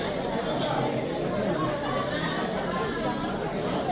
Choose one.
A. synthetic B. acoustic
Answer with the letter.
B